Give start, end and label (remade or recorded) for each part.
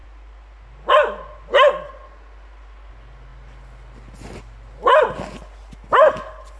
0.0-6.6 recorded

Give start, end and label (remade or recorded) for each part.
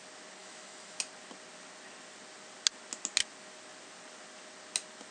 0.0-0.4 recorded; 0.4-1.0 remade; 1.0-5.1 recorded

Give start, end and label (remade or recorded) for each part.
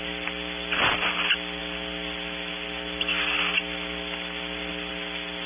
0.0-5.5 recorded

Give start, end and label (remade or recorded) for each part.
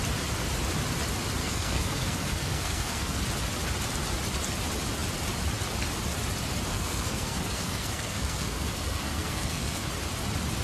0.0-1.4 recorded; 1.4-3.2 remade; 3.2-6.7 recorded; 6.7-9.9 remade; 9.9-10.6 recorded